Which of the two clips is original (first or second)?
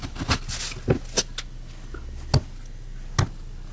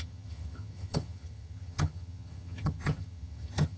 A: first